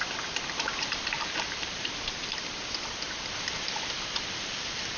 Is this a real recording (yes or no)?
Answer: no